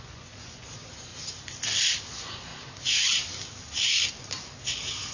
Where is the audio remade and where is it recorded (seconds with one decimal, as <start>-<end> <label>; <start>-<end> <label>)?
0.0-1.1 remade; 1.1-2.1 recorded; 2.1-2.5 remade; 2.5-5.1 recorded

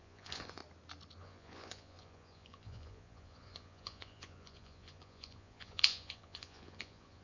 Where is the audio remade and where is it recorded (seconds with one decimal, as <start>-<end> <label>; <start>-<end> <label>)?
0.0-0.6 remade; 0.6-1.2 recorded; 1.2-7.2 remade

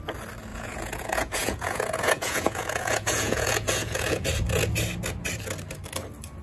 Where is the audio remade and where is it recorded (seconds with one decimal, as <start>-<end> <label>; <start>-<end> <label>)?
0.0-0.5 recorded; 0.5-4.3 remade; 4.3-6.4 recorded

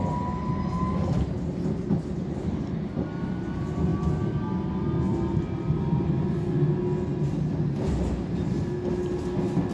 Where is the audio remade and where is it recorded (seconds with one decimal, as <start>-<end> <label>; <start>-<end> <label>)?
0.0-9.7 recorded

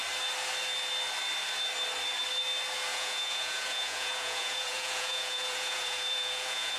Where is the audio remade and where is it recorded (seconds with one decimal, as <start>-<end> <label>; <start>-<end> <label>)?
0.0-2.9 recorded; 2.9-6.8 remade

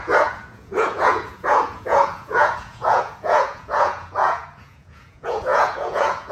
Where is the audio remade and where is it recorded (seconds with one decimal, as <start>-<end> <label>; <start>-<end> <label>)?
0.0-6.3 remade

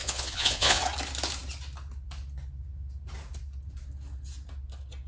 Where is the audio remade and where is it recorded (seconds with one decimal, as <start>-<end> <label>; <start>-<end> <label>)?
0.0-0.8 remade; 0.8-5.1 recorded

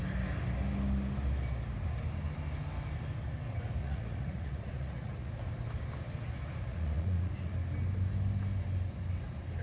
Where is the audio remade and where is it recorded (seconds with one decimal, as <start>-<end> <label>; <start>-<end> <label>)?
0.0-3.8 recorded; 3.8-5.3 remade; 5.3-6.7 recorded; 6.7-7.5 remade; 7.5-9.6 recorded